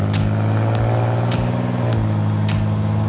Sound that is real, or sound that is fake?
real